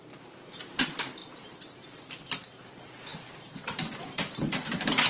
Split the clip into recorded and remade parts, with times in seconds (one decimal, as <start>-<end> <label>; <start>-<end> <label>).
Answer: 0.0-5.1 remade